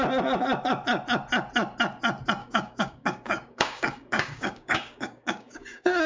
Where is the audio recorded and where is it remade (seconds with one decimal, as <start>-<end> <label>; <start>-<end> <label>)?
0.0-2.4 recorded; 2.4-6.1 remade